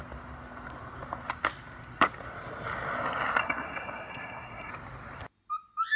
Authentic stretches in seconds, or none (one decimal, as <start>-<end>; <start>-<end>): 0.0-3.4; 4.7-6.0

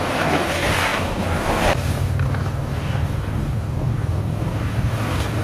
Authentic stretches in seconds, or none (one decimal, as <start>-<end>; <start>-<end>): none

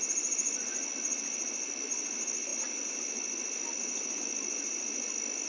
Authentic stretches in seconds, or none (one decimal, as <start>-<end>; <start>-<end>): 0.0-5.5

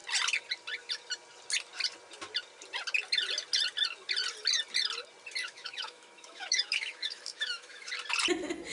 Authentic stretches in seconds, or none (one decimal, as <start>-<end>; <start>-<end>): 0.0-5.4; 7.9-8.7

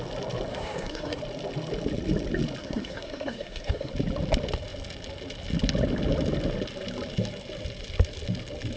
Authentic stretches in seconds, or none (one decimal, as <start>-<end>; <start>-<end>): 0.0-0.5; 1.2-2.6; 3.9-8.8

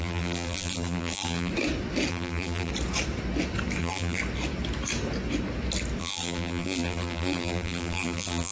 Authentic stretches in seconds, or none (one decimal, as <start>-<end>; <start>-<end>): 1.5-2.1; 2.7-3.8; 4.2-6.0

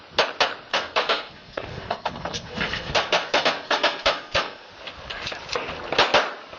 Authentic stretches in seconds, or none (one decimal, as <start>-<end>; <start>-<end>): 0.0-0.7; 4.7-6.6